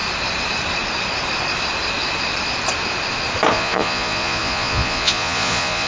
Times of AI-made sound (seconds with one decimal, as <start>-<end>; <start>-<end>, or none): 3.5-5.9